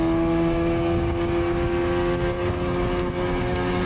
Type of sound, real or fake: fake